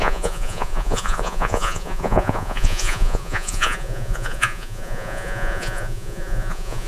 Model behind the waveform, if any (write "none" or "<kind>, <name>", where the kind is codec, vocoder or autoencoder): vocoder, Vocos